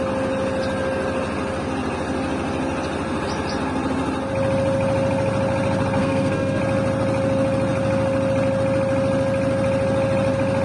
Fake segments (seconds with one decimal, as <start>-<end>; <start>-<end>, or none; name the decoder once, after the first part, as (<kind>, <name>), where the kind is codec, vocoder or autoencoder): 6.0-6.6 (codec, SNAC)